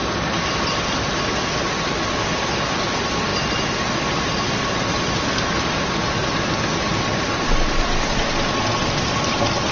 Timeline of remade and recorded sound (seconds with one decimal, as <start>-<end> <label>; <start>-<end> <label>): 0.0-9.7 recorded